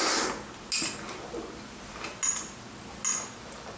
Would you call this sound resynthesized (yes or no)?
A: no